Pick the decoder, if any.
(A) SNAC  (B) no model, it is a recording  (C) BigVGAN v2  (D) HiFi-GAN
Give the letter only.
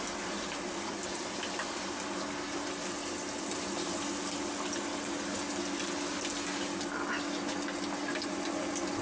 B